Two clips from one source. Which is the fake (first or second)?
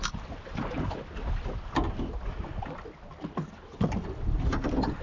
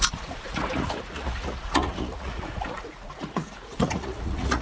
second